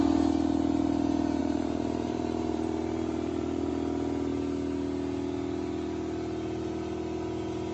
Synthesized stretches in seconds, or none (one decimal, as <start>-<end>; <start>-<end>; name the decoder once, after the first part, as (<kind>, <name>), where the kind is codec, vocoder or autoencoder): 1.4-3.7 (vocoder, BigVGAN v2)